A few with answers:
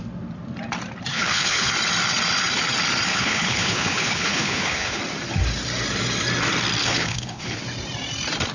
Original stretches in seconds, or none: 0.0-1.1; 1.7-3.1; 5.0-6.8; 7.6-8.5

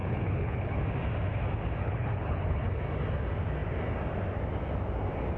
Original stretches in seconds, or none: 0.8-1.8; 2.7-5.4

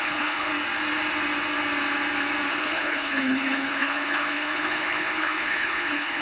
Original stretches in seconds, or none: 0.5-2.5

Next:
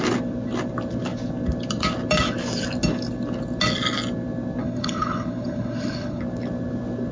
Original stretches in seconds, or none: 0.0-4.6; 6.2-7.1

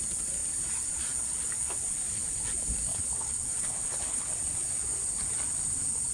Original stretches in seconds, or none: 0.0-2.9; 4.3-6.1

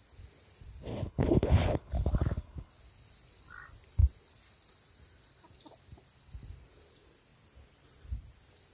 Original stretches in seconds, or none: 0.0-0.9; 2.7-8.7

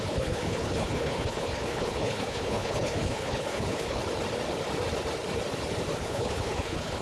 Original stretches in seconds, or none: 4.0-6.0

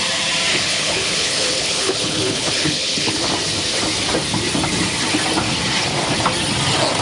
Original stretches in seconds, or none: 0.0-0.5; 3.3-7.0